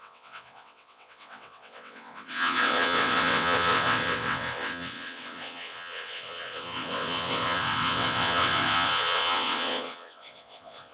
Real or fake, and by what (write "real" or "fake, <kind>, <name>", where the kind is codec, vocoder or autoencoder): fake, vocoder, WaveNeXt